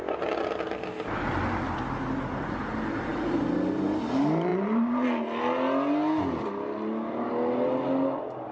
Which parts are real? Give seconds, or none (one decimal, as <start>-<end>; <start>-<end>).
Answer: 0.0-8.5